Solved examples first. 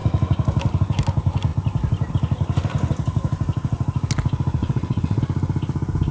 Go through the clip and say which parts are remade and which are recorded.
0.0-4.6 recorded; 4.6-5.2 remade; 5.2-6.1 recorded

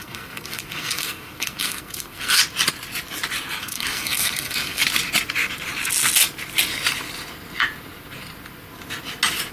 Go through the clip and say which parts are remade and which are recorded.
0.0-2.4 remade; 2.4-3.6 recorded; 3.6-4.8 remade; 4.8-9.5 recorded

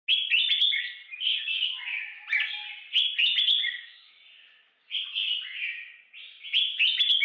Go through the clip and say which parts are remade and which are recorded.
0.0-1.0 recorded; 1.0-1.8 remade; 1.8-3.6 recorded; 3.6-4.1 remade; 4.1-7.2 recorded

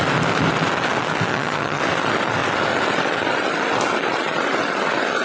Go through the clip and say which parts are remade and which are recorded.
0.0-1.3 recorded; 1.3-1.8 remade; 1.8-5.2 recorded